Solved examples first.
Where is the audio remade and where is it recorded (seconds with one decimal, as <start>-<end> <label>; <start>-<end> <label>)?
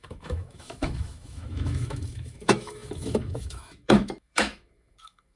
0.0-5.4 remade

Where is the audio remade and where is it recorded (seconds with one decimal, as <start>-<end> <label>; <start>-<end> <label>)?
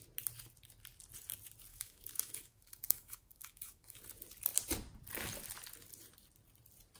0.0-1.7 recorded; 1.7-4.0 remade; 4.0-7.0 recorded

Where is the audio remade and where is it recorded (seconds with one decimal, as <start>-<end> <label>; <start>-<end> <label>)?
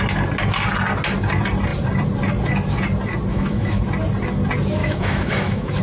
0.0-3.3 recorded; 3.3-3.8 remade; 3.8-4.8 recorded; 4.8-5.8 remade